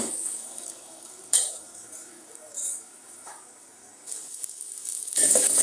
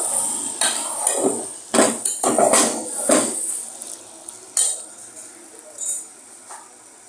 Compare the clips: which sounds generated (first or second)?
first